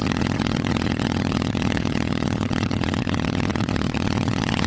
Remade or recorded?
remade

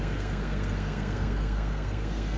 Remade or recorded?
remade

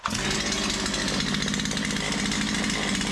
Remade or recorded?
recorded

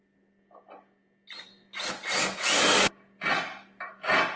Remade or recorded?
recorded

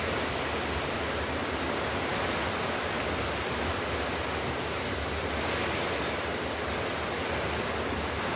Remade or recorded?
recorded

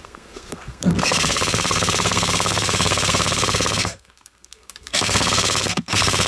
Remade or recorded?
remade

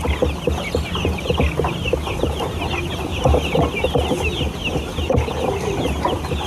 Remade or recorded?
recorded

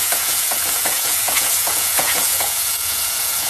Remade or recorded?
remade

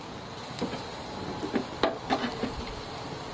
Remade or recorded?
recorded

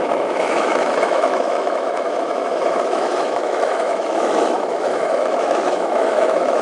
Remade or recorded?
remade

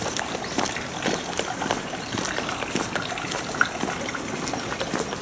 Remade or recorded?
recorded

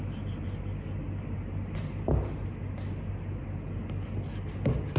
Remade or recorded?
recorded